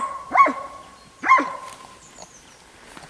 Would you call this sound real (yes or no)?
no